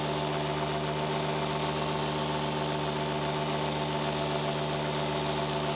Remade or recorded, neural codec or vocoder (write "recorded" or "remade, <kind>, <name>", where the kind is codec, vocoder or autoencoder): recorded